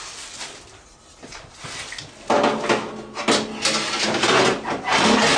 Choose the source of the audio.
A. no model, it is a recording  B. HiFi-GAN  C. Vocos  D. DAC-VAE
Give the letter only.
A